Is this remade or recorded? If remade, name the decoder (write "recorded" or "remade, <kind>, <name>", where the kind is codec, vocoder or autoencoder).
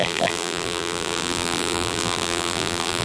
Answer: remade, vocoder, BigVGAN v2